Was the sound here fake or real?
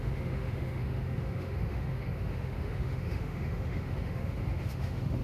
fake